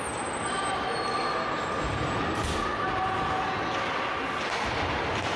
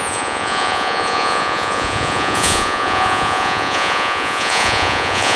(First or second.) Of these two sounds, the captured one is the first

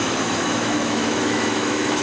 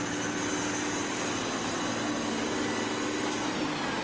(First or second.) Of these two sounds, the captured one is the second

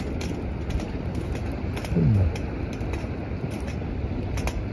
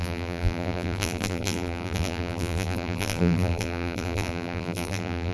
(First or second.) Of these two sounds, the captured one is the first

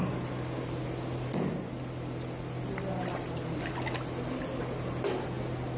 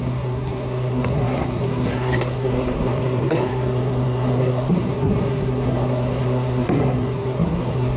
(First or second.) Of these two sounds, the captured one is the first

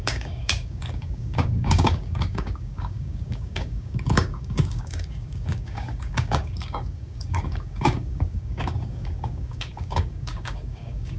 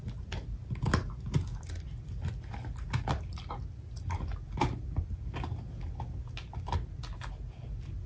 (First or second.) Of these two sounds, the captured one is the second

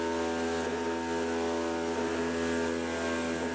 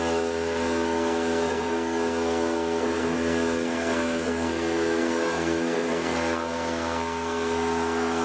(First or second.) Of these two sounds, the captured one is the first